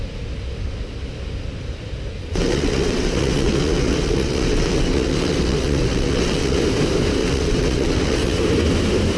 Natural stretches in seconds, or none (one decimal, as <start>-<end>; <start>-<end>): 0.0-2.2; 6.6-7.2; 8.4-9.2